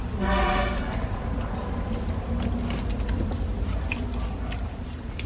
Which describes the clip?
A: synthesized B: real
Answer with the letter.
B